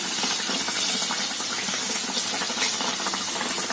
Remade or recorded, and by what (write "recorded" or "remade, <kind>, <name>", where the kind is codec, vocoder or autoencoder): recorded